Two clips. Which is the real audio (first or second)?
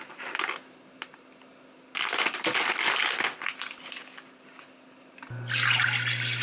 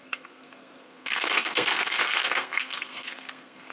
first